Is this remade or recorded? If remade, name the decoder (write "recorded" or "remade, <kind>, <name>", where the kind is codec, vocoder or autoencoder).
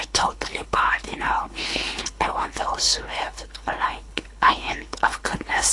remade, codec, HILCodec